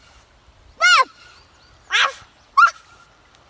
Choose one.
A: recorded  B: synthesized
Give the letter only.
A